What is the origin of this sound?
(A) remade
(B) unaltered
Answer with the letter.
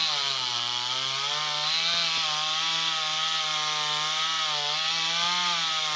B